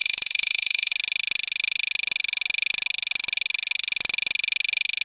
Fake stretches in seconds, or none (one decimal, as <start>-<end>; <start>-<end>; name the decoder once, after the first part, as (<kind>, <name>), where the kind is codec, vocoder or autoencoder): 0.0-0.9 (vocoder, BigVGAN v2)